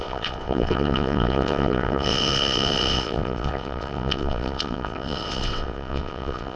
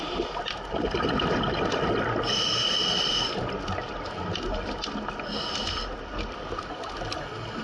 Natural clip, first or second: second